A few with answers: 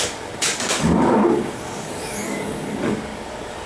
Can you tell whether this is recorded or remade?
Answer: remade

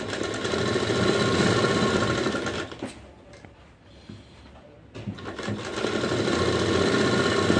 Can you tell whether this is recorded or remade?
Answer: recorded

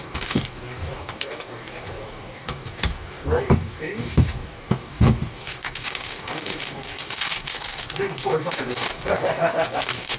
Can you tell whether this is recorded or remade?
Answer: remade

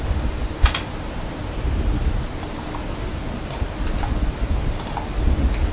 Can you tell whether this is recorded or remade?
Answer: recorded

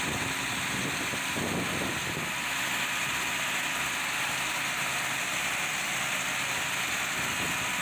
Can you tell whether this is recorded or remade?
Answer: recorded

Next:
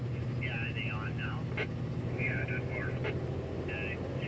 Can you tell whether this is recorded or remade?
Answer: recorded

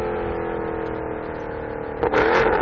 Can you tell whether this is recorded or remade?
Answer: recorded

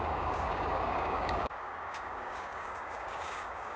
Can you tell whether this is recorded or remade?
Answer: remade